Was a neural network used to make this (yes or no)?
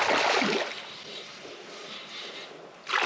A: no